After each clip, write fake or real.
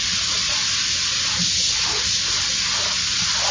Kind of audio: real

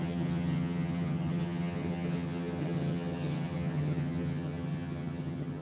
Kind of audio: fake